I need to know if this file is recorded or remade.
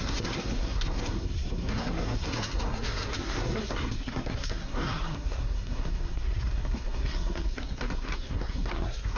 remade